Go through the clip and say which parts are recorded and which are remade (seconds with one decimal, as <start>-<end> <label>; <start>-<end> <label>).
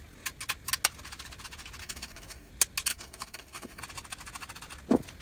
0.0-1.8 recorded; 1.8-2.5 remade; 2.5-2.9 recorded; 2.9-3.8 remade; 3.8-5.2 recorded